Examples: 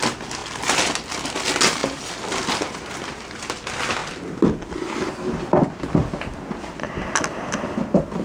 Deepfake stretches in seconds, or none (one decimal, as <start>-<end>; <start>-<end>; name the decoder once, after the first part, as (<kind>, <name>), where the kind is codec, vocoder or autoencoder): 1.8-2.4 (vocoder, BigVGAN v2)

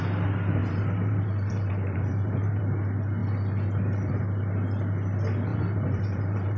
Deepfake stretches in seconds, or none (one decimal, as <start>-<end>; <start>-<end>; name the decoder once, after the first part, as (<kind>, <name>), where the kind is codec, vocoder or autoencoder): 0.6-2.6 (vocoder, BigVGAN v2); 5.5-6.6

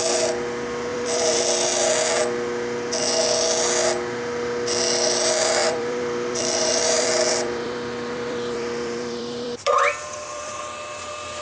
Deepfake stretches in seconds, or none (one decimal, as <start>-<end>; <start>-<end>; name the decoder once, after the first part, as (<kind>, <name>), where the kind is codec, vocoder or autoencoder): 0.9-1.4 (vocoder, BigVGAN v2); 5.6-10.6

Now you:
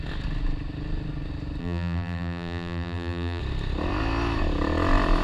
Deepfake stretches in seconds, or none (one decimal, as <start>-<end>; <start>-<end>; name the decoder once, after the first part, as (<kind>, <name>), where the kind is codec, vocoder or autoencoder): 1.6-3.4 (vocoder, BigVGAN v2)